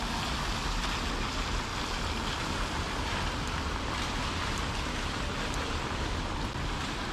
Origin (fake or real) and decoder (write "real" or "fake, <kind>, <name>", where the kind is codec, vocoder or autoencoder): real